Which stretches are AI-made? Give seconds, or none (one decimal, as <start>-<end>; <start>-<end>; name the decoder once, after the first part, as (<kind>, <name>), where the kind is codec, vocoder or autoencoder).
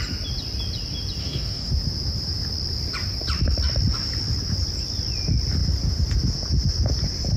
1.2-1.7 (codec, DAC)